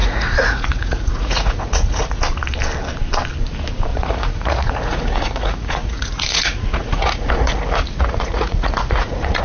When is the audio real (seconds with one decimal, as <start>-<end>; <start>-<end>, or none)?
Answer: 2.2-3.9